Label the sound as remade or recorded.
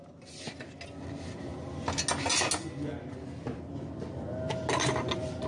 recorded